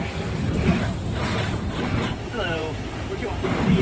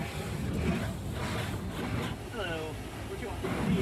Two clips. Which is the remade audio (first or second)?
first